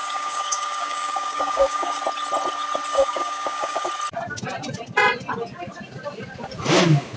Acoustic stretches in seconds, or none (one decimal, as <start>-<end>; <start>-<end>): 2.0-2.9; 3.9-7.2